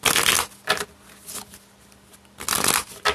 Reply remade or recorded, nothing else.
recorded